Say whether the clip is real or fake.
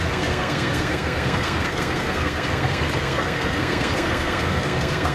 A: fake